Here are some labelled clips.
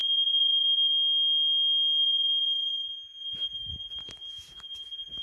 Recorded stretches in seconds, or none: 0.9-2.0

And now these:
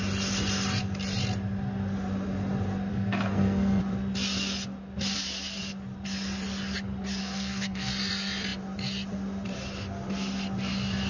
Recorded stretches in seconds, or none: 0.0-2.9; 3.8-7.2; 7.9-11.1

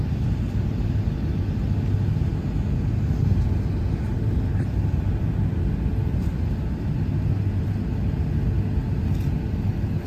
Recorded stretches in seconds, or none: 0.0-10.1

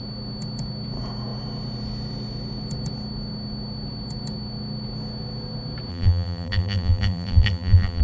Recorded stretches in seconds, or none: 0.0-5.9

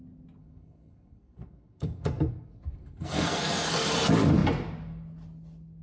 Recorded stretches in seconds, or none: 0.0-0.4; 3.9-5.8

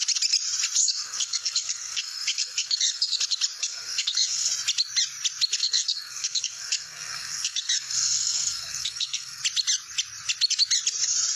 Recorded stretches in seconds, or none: 0.0-0.8; 3.2-3.6; 4.5-5.6; 9.4-11.4

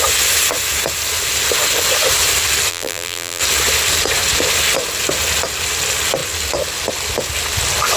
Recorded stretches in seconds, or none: 0.0-2.7; 3.4-8.0

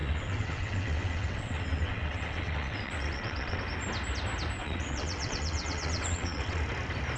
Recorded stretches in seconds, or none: 3.6-4.6; 6.6-7.2